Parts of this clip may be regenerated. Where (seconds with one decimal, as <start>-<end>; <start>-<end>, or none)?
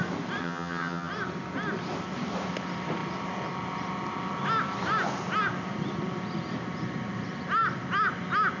0.4-1.1